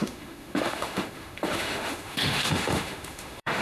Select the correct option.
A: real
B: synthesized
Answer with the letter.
B